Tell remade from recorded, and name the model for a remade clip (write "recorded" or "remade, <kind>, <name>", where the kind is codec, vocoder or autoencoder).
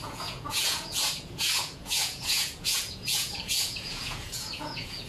remade, vocoder, Vocos